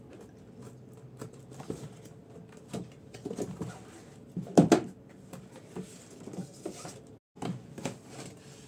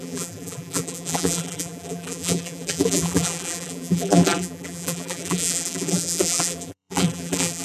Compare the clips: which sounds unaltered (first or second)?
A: first